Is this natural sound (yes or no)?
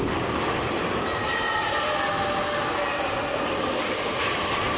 yes